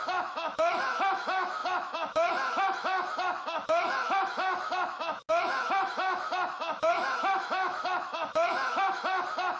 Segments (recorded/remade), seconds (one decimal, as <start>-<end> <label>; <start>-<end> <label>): 0.0-9.6 remade